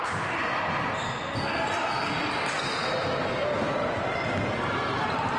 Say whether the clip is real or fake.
real